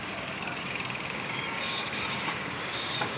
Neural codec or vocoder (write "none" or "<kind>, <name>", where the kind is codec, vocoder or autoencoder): codec, DAC